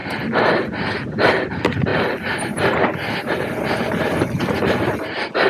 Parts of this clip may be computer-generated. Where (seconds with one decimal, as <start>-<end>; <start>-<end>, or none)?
none